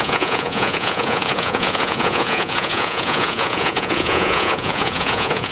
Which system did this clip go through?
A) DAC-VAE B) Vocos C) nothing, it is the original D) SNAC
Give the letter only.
B